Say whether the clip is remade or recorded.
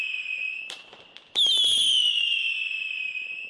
remade